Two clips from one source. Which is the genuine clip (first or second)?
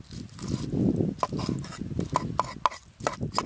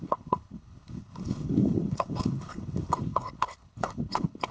first